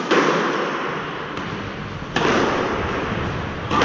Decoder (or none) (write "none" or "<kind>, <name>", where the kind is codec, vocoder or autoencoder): none